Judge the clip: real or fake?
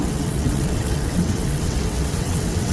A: fake